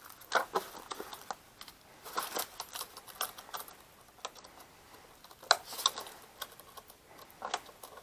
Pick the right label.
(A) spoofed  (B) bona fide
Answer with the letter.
B